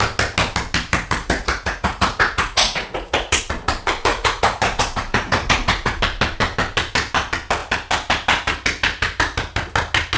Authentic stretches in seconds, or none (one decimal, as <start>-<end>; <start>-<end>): 0.0-0.9; 3.4-4.1; 6.0-10.2